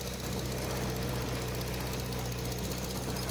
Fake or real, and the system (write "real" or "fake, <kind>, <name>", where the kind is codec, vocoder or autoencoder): real